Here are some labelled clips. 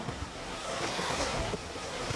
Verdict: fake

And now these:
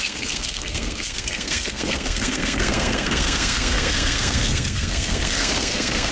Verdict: fake